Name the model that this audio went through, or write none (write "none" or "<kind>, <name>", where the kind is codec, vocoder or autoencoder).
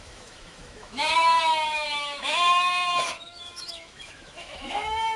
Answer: autoencoder, DAC-VAE